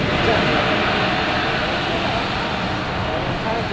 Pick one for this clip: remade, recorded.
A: recorded